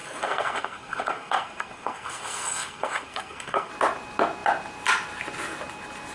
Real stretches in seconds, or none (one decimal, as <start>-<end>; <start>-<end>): 3.7-6.1

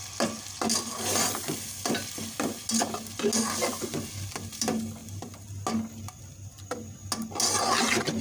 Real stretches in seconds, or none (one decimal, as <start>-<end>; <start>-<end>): 0.0-8.2